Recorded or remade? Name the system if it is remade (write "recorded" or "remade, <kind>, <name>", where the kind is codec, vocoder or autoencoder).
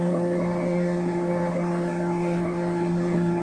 remade, codec, SNAC